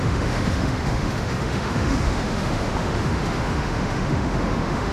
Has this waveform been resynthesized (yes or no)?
yes